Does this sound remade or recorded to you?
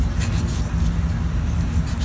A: recorded